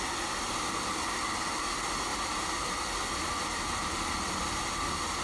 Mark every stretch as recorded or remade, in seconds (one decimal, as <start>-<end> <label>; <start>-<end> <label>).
0.0-2.1 recorded; 2.1-4.4 remade; 4.4-5.2 recorded